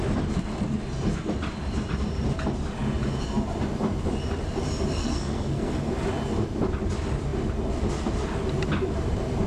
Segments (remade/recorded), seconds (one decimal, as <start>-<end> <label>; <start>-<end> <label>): 0.0-5.0 recorded; 5.0-5.9 remade; 5.9-9.5 recorded